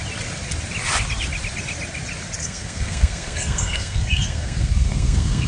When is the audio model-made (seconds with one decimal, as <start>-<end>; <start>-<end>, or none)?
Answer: 2.4-5.5

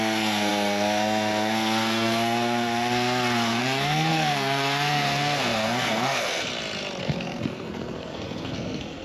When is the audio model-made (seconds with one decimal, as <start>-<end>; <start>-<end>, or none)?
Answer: 0.0-6.5; 7.0-9.0